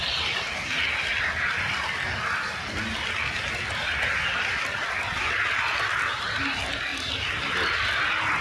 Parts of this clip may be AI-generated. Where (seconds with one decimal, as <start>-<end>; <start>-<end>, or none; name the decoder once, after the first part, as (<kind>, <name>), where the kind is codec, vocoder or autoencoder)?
none